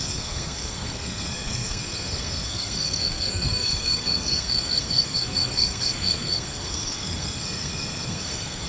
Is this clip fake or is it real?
fake